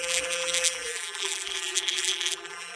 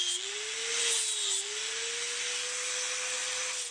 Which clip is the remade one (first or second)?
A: first